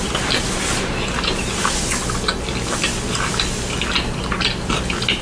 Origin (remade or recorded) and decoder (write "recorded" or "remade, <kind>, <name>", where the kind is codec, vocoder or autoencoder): recorded